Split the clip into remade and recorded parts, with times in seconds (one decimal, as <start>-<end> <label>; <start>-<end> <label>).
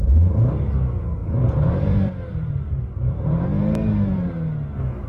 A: 0.0-1.2 recorded; 1.2-4.3 remade; 4.3-5.1 recorded